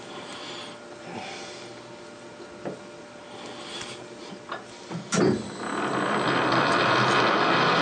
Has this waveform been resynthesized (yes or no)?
yes